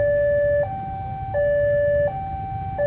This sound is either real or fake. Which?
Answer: real